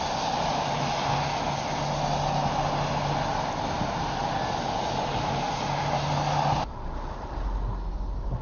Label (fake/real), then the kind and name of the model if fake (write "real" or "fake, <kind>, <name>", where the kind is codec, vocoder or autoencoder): real